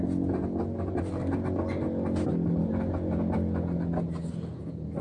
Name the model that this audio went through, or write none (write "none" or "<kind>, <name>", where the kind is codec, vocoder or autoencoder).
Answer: none